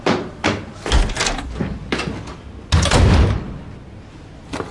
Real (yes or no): yes